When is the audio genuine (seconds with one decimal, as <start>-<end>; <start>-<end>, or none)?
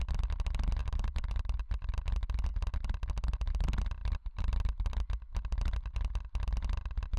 0.0-0.8; 1.6-4.0; 5.1-7.2